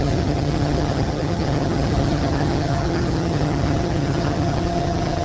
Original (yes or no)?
no